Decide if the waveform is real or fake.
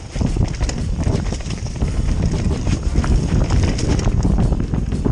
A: real